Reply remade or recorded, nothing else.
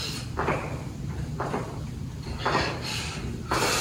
remade